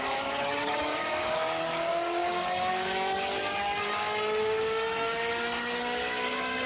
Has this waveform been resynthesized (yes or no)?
yes